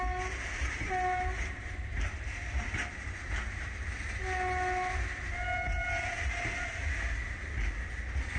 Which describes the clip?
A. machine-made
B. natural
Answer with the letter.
B